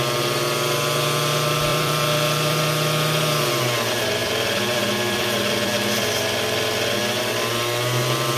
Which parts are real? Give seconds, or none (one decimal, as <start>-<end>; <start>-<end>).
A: 0.0-1.7; 2.6-4.2; 6.1-8.4